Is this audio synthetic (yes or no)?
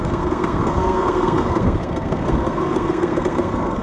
yes